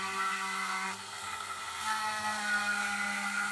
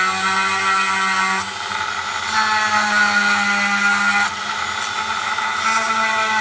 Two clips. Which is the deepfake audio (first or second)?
first